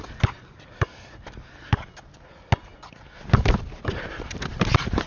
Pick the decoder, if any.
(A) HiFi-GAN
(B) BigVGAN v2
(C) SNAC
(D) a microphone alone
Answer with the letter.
D